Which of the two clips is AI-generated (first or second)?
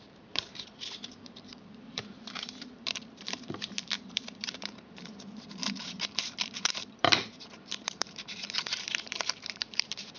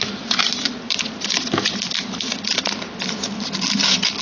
first